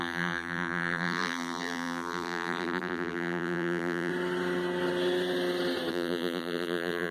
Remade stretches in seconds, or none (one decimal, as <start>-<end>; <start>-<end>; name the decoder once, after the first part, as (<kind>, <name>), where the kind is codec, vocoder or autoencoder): 0.0-4.1 (vocoder, BigVGAN v2); 5.9-7.1